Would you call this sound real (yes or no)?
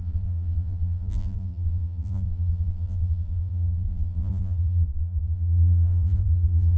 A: no